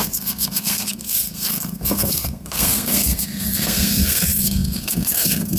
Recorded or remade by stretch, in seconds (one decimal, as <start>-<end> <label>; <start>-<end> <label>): 0.0-5.6 remade